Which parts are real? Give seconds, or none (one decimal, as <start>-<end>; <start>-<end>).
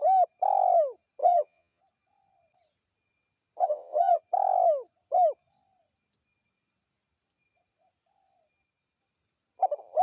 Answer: 0.0-1.2; 1.8-3.6; 4.2-10.0